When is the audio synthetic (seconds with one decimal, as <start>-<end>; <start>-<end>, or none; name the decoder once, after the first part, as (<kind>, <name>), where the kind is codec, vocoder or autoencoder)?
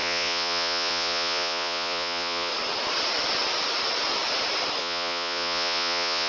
0.0-2.5 (vocoder, Vocos); 4.8-6.3